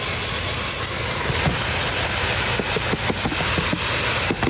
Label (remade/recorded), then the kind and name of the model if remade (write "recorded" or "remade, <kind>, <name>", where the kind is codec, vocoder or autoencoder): recorded